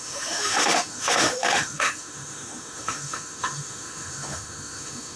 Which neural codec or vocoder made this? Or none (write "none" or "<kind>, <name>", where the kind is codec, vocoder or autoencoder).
autoencoder, DAC-VAE